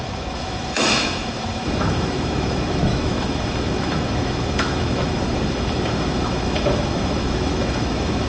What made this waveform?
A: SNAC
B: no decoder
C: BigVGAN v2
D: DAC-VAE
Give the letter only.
D